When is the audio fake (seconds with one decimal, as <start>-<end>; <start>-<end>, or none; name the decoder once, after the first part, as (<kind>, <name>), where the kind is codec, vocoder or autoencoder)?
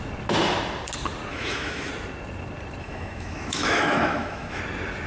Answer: 1.3-1.9 (autoencoder, DAC-VAE); 2.8-4.6